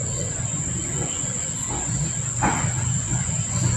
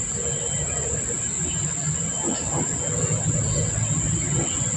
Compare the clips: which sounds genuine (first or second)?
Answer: second